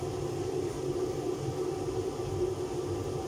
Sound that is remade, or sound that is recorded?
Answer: recorded